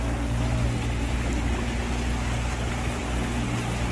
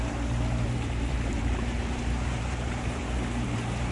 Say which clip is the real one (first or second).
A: first